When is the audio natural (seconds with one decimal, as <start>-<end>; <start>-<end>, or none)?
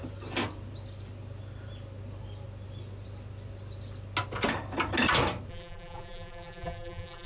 0.0-5.5